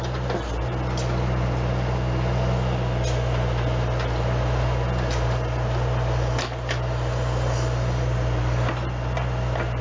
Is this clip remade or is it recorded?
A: recorded